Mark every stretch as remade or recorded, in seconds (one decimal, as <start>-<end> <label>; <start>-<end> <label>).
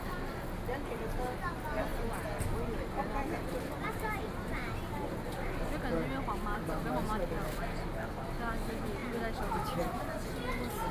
0.0-10.9 recorded